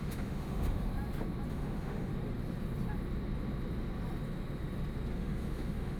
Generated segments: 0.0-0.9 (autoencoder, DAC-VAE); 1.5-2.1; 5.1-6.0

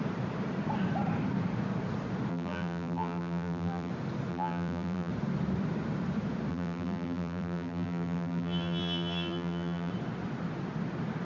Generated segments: 2.3-3.9 (vocoder, BigVGAN v2); 4.3-5.1; 6.5-9.9

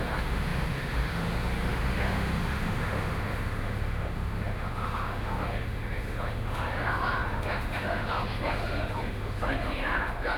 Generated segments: 0.0-10.4 (autoencoder, DAC-VAE)

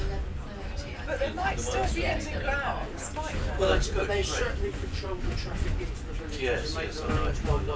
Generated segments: 4.2-6.7 (vocoder, Vocos)

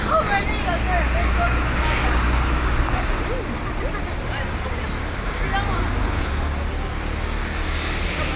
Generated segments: 1.2-3.2 (codec, DAC); 7.4-8.0

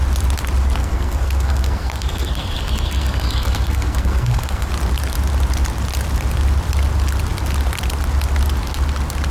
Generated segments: 0.8-4.7 (codec, SNAC)

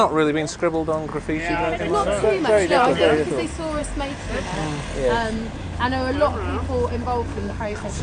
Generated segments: 7.3-8.0 (codec, SNAC)